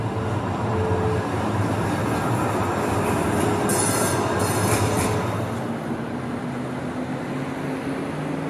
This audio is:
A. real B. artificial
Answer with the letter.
A